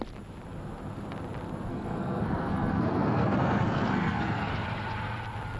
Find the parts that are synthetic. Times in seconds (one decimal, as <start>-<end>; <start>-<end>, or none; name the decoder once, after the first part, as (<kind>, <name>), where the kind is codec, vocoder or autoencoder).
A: 1.7-4.5 (codec, SNAC)